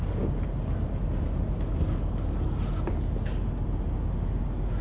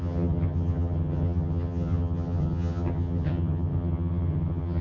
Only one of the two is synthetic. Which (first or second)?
second